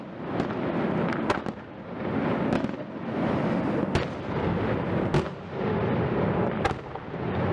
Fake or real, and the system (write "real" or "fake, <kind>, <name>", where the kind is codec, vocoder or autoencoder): real